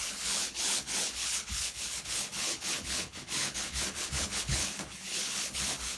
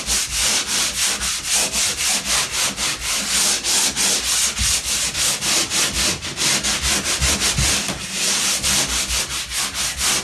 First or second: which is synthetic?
first